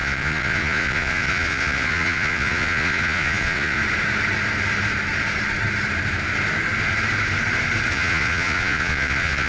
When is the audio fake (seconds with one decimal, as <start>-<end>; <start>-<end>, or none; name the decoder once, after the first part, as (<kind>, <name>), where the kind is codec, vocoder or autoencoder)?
0.0-3.8 (vocoder, Vocos); 7.9-9.5